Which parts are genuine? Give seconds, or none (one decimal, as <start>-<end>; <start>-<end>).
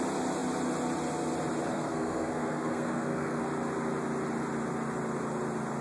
0.0-1.7; 3.4-5.8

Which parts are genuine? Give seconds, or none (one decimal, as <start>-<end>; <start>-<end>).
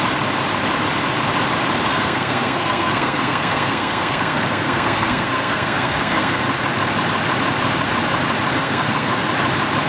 0.0-1.9; 6.4-8.6; 9.2-9.9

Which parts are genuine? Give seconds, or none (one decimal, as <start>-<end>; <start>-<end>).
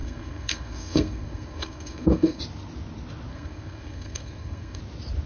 2.4-3.3; 4.8-5.3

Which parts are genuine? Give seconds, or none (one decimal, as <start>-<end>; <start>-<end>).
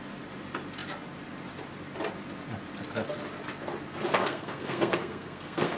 0.0-4.2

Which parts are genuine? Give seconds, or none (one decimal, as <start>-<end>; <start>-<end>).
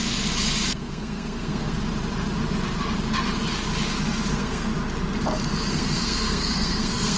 0.0-0.7; 1.8-4.3; 4.7-5.7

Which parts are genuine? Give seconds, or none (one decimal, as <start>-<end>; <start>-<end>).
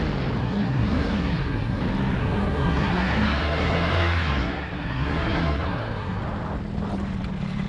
0.0-0.4; 1.8-2.2; 6.2-7.7